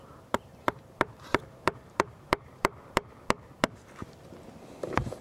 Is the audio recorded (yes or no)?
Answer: no